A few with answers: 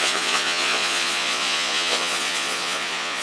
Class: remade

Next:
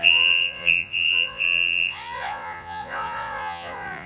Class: remade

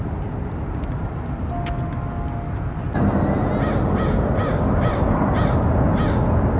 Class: recorded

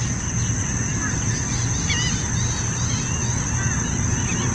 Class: recorded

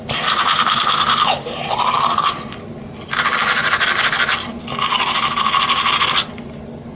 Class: recorded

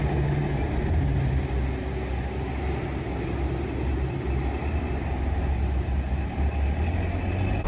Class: recorded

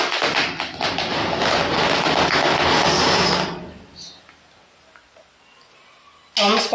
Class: recorded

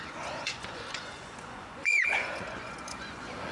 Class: remade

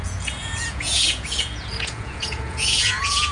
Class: remade